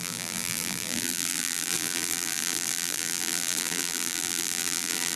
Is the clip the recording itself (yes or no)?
no